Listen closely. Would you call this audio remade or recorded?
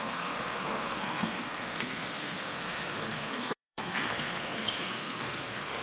remade